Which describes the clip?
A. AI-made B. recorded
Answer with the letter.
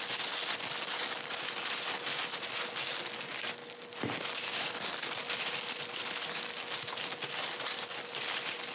B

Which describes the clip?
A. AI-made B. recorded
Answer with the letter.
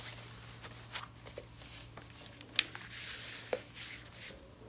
B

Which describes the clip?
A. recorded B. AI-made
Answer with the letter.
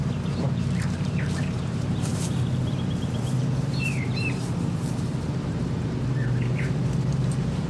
B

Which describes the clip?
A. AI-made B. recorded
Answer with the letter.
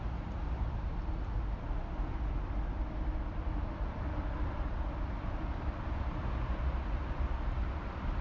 A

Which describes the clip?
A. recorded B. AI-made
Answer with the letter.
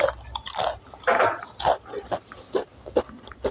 A